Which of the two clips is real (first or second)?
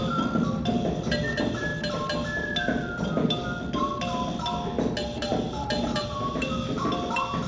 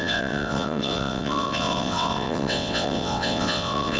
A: first